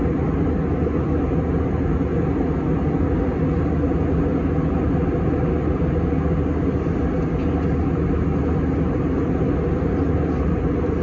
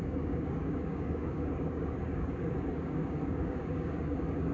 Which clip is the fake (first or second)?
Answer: second